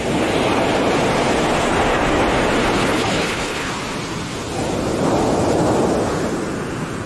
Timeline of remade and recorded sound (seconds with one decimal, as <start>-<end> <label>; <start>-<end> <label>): 0.0-2.8 recorded; 2.8-3.7 remade; 3.7-7.1 recorded